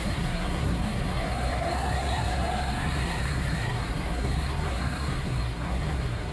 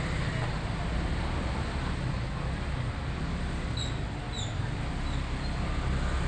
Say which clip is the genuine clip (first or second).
second